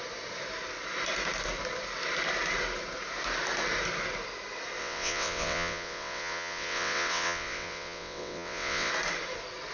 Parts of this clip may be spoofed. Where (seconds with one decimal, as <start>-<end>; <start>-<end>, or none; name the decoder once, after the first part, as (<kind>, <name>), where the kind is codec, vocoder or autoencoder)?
4.8-8.9 (vocoder, WaveNeXt)

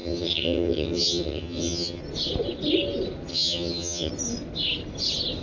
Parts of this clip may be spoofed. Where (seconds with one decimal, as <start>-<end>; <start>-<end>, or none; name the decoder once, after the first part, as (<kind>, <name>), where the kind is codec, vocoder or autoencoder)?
0.0-2.0 (vocoder, HiFi-GAN); 3.3-4.1

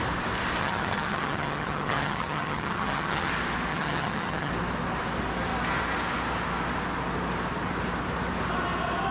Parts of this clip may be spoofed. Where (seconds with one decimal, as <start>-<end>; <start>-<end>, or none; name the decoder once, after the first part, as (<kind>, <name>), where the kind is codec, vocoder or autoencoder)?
0.6-3.3 (vocoder, HiFi-GAN); 3.7-4.5

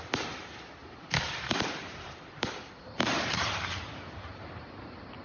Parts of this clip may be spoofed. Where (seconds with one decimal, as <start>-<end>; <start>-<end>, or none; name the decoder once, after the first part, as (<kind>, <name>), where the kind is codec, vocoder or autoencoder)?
0.8-3.9 (vocoder, BigVGAN v2)